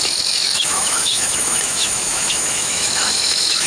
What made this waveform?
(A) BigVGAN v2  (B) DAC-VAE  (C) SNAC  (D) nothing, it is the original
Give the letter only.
B